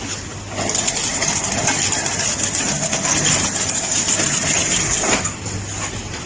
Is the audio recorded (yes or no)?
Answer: yes